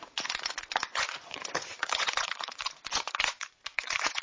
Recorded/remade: remade